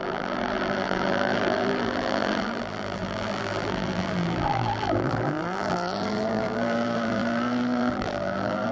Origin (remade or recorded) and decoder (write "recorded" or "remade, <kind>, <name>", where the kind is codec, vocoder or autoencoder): remade, vocoder, BigVGAN v2